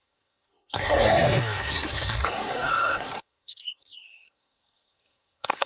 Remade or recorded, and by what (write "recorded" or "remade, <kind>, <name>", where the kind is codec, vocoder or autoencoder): remade, codec, SNAC